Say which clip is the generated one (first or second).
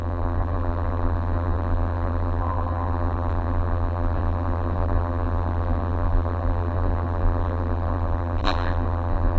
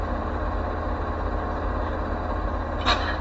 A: first